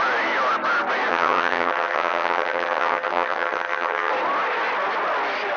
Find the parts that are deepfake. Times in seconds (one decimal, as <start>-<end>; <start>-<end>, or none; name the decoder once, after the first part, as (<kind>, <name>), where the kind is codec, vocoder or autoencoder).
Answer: 1.1-4.1 (vocoder, HiFi-GAN)